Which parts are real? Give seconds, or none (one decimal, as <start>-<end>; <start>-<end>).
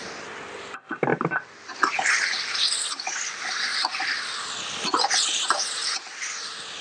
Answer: 0.0-1.1; 2.1-3.7; 4.6-6.8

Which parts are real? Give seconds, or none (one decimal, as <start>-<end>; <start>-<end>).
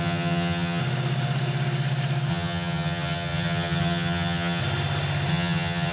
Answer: 0.8-2.3; 4.6-5.3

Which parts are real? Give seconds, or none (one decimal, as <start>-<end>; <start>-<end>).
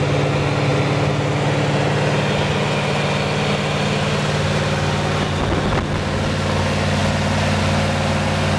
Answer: 0.0-8.6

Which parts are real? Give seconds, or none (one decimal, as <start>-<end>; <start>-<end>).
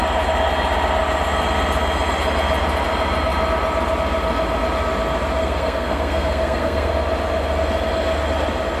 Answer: 0.0-5.4; 6.9-8.8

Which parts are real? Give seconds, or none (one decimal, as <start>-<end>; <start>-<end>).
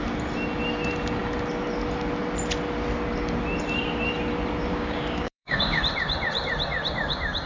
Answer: 0.0-4.7; 5.8-7.5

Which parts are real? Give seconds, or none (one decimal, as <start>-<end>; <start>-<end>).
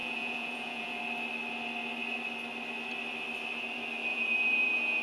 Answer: 1.0-4.1